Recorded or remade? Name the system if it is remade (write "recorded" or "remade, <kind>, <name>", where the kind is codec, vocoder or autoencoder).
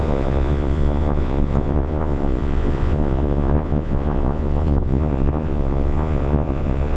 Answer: remade, vocoder, Vocos